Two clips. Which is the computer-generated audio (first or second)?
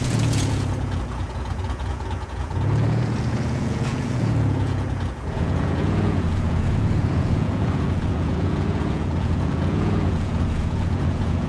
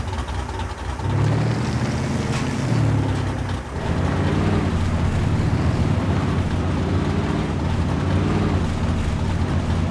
first